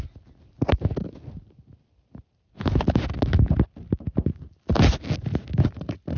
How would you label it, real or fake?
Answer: real